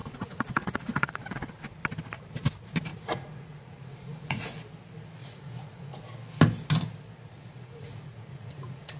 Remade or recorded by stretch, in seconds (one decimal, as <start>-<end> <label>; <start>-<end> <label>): 0.0-1.5 remade; 1.5-2.9 recorded; 2.9-4.4 remade; 4.4-5.2 recorded; 5.2-6.0 remade; 6.0-7.3 recorded; 7.3-9.0 remade